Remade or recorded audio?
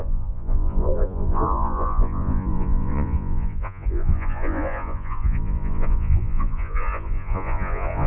remade